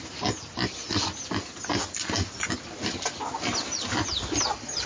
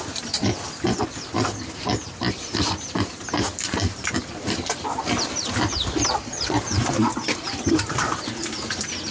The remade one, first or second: second